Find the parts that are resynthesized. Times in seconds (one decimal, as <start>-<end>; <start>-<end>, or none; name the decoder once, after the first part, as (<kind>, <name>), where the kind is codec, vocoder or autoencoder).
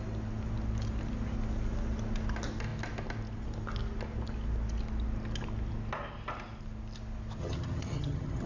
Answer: 7.4-8.5 (vocoder, HiFi-GAN)